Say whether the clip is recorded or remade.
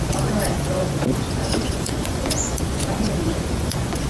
remade